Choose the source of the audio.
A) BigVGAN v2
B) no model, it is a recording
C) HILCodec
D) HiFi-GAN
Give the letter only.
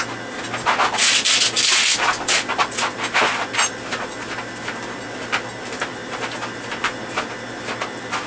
B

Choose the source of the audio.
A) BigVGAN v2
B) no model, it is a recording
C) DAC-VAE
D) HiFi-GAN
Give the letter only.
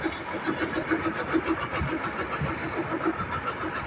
B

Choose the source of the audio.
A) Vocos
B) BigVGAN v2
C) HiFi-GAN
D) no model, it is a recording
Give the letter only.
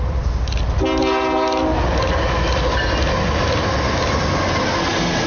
D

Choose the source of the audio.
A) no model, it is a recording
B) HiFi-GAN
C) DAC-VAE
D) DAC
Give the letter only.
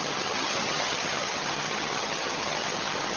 B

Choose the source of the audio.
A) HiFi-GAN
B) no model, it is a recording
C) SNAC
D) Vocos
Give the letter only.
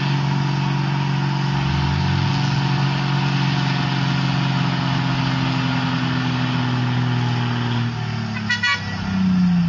B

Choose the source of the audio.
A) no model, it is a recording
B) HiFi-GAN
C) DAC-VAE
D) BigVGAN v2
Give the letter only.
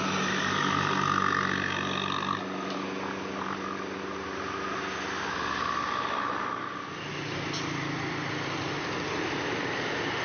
A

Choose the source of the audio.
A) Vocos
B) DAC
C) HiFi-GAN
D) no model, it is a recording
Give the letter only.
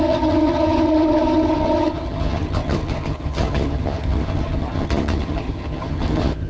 C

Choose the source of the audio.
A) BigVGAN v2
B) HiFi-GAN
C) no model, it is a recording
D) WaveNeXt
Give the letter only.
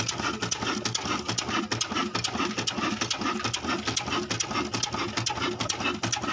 C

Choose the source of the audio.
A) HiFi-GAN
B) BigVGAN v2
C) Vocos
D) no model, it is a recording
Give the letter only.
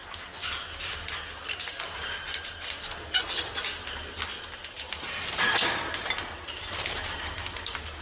D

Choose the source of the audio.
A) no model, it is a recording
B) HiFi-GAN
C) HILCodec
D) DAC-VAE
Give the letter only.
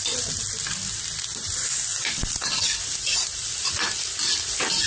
A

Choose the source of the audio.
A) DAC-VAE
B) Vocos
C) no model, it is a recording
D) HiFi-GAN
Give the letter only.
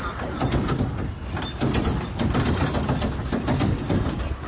C